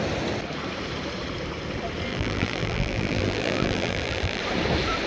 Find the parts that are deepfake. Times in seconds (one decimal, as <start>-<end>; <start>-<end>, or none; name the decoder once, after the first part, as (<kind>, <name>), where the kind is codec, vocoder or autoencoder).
2.1-4.4 (vocoder, BigVGAN v2)